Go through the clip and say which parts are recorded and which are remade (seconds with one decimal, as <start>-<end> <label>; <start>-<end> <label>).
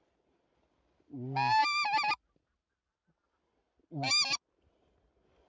0.0-5.5 recorded